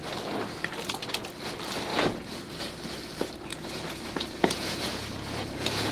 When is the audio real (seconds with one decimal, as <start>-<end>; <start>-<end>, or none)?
0.0-1.9; 2.6-3.5